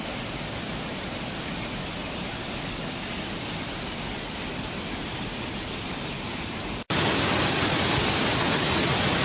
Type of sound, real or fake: real